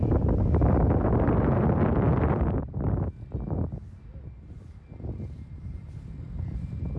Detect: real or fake real